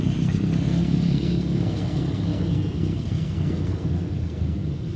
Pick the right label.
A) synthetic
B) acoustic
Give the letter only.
A